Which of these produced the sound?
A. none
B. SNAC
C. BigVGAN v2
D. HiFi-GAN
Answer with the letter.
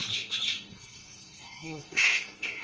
B